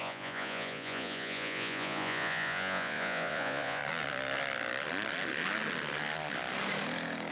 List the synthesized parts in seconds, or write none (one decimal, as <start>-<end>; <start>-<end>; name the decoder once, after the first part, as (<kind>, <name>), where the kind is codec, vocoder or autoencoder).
0.0-3.8 (vocoder, Vocos)